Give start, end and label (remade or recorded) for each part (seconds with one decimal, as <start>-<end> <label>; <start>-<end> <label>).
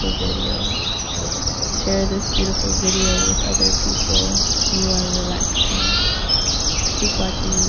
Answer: 0.0-0.8 recorded; 0.8-1.8 remade; 1.8-7.7 recorded